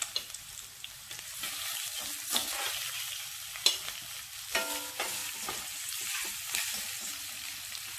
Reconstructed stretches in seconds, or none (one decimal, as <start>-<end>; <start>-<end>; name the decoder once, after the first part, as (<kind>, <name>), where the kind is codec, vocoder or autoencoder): none